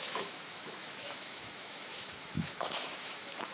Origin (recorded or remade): remade